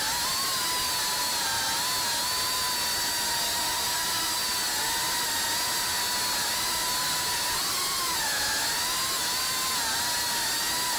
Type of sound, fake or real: real